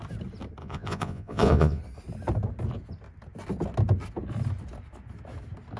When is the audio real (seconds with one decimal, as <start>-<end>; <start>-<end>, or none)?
0.0-0.6; 1.8-5.8